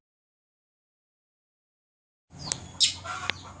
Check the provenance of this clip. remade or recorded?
recorded